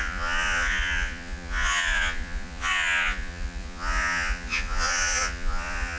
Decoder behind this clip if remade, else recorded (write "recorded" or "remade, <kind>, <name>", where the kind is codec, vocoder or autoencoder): remade, vocoder, Vocos